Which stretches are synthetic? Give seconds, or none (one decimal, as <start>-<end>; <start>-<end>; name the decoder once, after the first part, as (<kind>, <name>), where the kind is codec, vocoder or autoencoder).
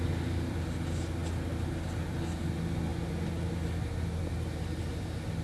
none